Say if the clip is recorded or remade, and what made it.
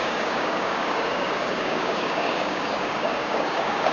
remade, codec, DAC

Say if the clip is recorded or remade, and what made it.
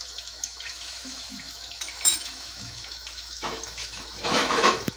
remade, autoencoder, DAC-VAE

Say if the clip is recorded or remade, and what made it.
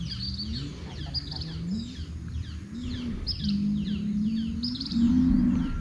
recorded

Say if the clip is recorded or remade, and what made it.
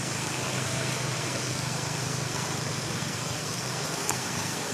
remade, codec, SNAC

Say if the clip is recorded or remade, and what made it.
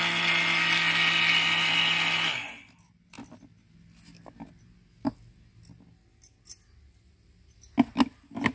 recorded